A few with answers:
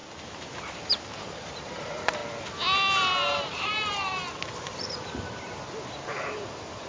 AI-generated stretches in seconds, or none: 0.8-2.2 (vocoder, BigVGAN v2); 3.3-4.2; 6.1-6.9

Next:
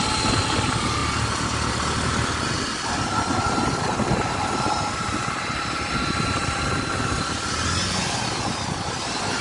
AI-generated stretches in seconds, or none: none

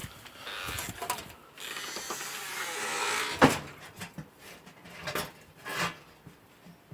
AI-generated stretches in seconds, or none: 4.1-5.7 (vocoder, BigVGAN v2); 6.4-6.9

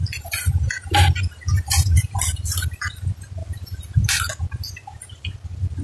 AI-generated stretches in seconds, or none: 1.5-2.2 (vocoder, BigVGAN v2); 3.4-4.2